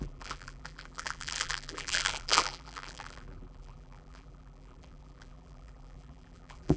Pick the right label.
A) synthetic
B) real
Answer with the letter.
A